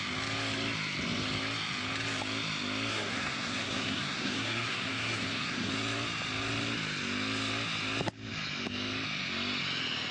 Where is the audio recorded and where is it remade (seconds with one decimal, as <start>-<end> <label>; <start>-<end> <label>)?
0.0-2.9 recorded; 2.9-5.7 remade; 5.7-10.1 recorded